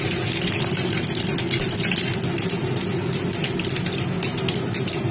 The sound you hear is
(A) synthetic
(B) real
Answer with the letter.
B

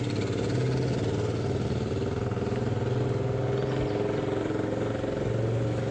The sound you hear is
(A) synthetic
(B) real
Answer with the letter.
B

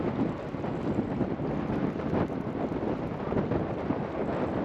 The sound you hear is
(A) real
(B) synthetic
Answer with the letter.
A